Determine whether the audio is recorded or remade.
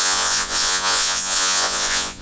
remade